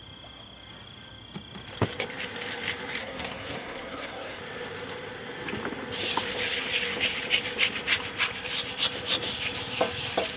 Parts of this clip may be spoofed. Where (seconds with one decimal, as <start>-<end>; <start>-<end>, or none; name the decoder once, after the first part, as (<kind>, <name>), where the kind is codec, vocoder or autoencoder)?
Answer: 3.0-4.4 (codec, SNAC)